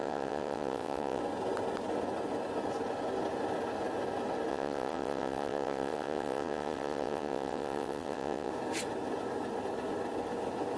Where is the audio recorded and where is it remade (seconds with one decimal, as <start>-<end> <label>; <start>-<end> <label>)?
0.0-1.2 remade; 1.2-4.5 recorded; 4.5-8.5 remade; 8.5-10.8 recorded